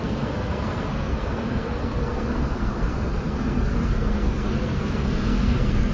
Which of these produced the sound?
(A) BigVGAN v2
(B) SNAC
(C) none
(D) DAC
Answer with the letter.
B